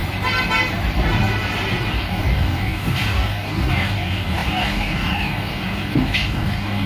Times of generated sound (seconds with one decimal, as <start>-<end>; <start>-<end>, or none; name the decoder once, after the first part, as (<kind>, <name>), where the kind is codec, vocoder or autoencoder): 1.9-6.9 (codec, DAC)